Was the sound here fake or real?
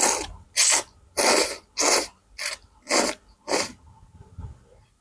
real